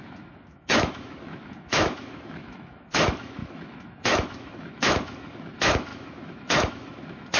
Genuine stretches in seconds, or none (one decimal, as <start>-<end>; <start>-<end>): none